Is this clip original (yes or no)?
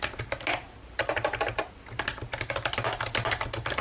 yes